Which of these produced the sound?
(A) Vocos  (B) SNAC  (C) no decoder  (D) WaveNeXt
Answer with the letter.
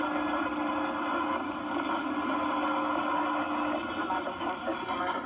C